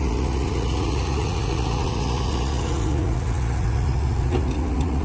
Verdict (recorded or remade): remade